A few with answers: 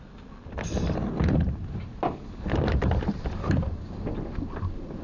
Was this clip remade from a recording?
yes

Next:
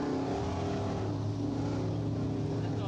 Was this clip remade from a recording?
no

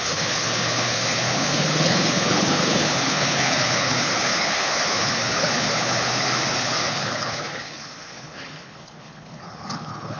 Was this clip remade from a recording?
yes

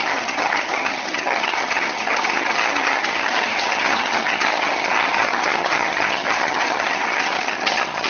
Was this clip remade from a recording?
yes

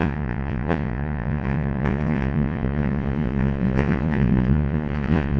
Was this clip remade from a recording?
yes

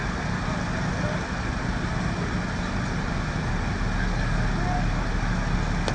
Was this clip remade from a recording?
no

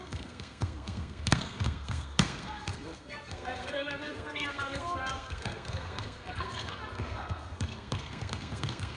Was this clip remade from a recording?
yes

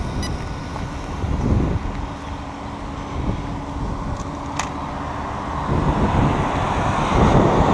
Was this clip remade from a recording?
no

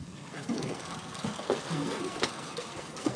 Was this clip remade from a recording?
yes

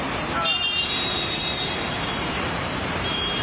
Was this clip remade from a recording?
yes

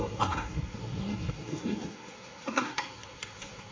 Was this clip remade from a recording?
yes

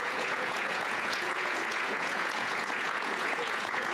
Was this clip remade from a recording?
yes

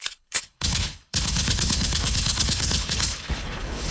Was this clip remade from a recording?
yes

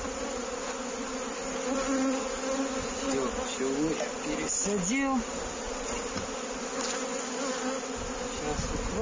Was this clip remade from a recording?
no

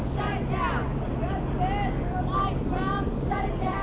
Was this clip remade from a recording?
no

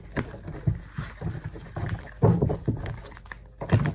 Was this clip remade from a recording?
no